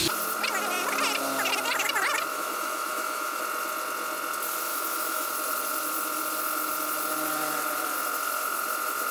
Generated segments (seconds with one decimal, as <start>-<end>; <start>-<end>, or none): 2.3-3.4; 4.7-5.3